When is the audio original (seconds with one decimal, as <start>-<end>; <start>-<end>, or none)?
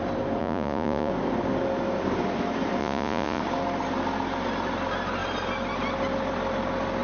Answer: 0.0-0.4; 1.1-2.8; 3.4-7.0